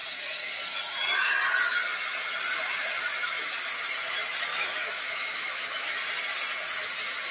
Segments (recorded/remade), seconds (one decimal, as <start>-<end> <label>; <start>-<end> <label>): 0.0-4.5 recorded; 4.5-6.0 remade; 6.0-7.3 recorded